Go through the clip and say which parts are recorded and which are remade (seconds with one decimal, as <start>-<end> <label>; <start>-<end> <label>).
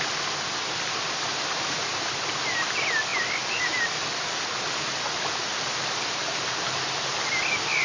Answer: 0.0-7.8 recorded